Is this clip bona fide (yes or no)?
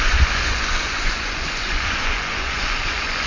no